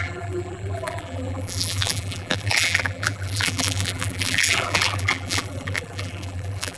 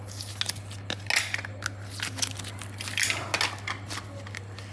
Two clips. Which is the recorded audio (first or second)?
second